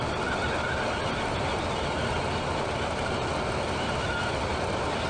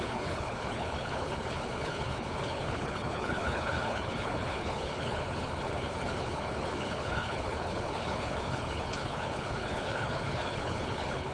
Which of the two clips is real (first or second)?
first